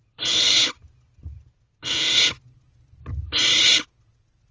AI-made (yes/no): no